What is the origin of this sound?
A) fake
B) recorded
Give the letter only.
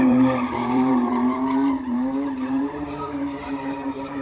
A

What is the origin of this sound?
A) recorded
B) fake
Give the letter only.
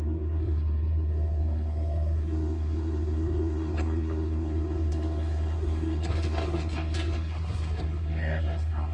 B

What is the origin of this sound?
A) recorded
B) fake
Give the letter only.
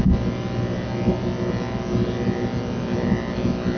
A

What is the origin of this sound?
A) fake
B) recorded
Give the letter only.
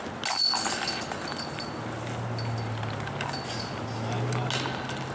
B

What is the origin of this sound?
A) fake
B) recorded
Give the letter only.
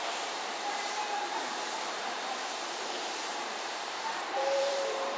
A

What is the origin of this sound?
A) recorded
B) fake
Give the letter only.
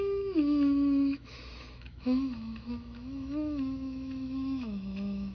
B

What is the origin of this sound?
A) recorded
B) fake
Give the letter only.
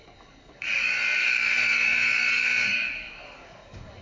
B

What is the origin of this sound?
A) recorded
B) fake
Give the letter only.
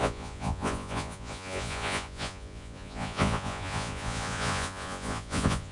B